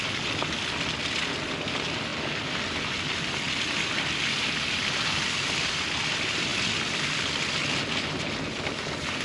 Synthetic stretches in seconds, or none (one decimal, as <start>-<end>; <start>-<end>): none